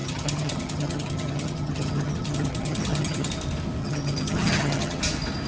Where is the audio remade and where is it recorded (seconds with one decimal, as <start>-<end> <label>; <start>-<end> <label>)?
0.0-3.3 remade; 3.3-3.8 recorded; 3.8-5.0 remade; 5.0-5.5 recorded